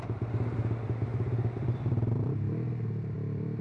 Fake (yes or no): yes